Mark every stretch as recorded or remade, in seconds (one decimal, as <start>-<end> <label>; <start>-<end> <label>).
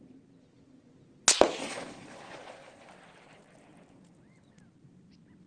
0.0-1.6 recorded; 1.6-2.9 remade; 2.9-5.5 recorded